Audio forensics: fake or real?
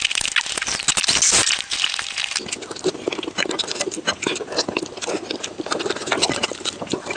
real